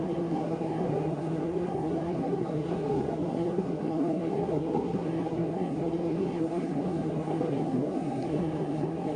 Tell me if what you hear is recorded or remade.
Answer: remade